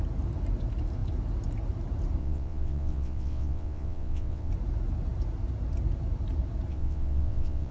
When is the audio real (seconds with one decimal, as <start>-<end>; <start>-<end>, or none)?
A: 0.0-2.2; 4.5-6.7